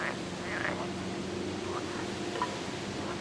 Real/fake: real